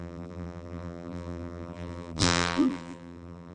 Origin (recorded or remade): remade